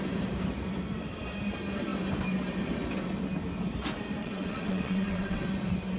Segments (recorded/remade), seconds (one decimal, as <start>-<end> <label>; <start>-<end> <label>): 0.0-4.2 recorded; 4.2-5.4 remade; 5.4-6.0 recorded